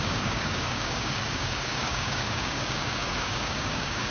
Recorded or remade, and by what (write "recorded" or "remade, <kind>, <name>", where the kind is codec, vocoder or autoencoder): remade, codec, DAC